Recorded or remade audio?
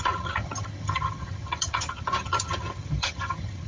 remade